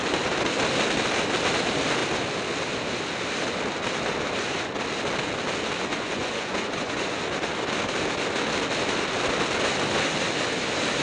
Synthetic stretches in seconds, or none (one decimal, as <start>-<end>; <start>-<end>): 5.9-7.2